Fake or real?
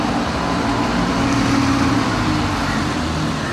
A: real